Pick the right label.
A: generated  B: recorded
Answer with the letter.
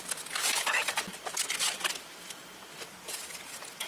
B